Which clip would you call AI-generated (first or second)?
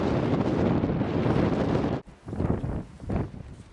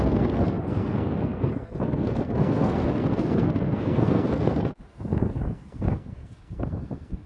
second